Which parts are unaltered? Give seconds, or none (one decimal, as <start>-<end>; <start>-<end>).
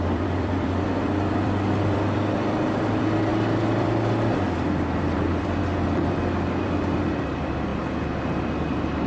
none